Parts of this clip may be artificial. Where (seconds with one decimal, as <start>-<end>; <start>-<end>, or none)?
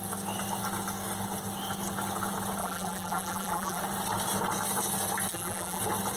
2.6-3.8; 5.3-5.8